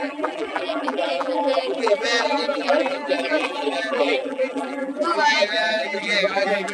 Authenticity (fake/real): fake